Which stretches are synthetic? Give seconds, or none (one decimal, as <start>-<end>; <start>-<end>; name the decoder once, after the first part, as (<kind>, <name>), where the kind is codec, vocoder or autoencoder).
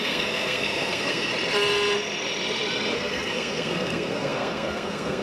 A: 0.0-1.3 (codec, SNAC); 2.9-5.2